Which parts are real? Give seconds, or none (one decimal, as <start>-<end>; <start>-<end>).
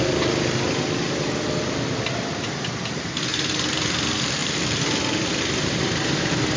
0.0-4.4; 5.4-6.6